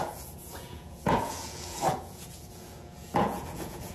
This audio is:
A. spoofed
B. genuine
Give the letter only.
A